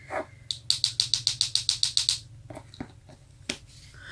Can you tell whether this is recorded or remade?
recorded